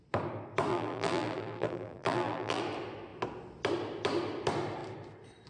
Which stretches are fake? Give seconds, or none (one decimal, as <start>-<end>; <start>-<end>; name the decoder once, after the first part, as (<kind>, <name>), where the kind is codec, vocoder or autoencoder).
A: 0.7-2.6 (vocoder, BigVGAN v2)